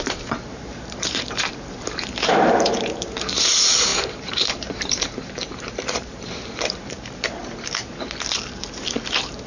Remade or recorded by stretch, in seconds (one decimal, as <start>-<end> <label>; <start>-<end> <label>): 0.0-7.4 remade; 7.4-8.6 recorded; 8.6-9.5 remade